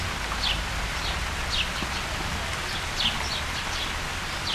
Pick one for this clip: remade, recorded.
recorded